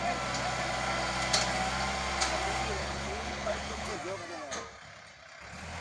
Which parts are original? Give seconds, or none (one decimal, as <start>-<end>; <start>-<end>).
0.0-2.8; 3.9-5.8